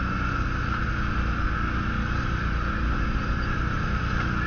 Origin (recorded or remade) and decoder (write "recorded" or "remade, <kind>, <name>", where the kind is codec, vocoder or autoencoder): recorded